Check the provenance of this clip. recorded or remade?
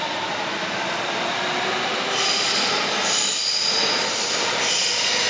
recorded